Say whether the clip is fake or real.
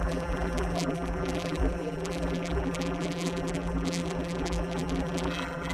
fake